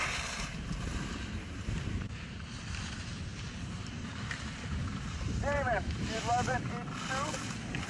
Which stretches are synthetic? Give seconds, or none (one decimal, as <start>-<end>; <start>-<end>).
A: 0.0-2.4; 3.3-6.2